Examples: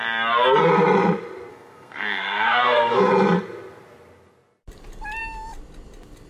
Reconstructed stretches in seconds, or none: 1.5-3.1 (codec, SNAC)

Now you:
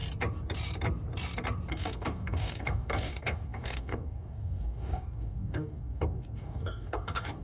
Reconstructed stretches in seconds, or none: 1.7-7.4 (codec, DAC)

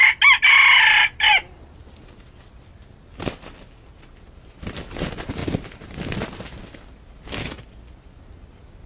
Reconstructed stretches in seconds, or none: none

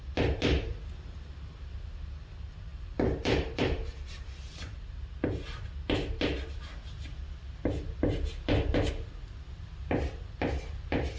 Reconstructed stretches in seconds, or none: 2.7-4.3 (vocoder, BigVGAN v2)

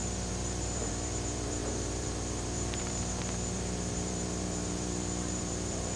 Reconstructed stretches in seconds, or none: 0.0-6.0 (vocoder, BigVGAN v2)

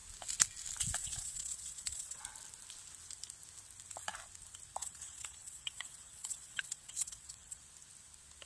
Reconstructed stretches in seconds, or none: 1.0-2.2 (vocoder, WaveNeXt); 4.8-7.6